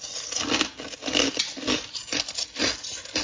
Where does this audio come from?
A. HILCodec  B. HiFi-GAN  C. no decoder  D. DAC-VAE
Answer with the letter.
C